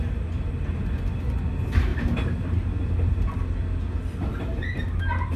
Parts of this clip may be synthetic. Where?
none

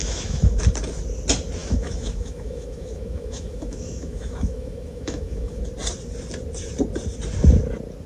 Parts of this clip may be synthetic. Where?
0.0-0.6 (autoencoder, DAC-VAE); 1.6-5.6

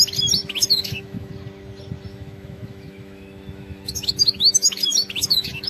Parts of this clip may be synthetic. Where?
0.4-1.3 (autoencoder, DAC-VAE); 2.1-5.7

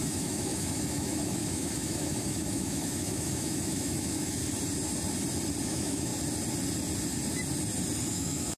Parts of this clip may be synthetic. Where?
0.0-4.4 (autoencoder, DAC-VAE); 5.6-6.1; 8.1-8.6

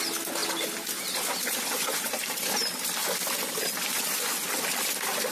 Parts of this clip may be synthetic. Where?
none

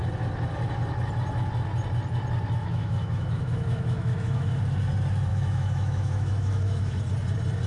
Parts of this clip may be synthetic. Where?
2.6-4.6 (autoencoder, DAC-VAE); 5.3-7.0

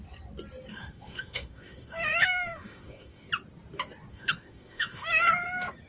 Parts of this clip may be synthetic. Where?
0.7-3.3 (autoencoder, DAC-VAE); 4.1-5.3